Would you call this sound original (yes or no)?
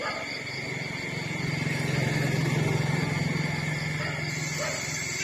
yes